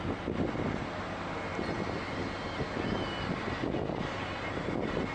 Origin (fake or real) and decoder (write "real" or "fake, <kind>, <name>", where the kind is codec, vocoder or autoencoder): real